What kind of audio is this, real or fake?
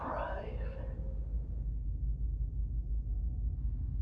real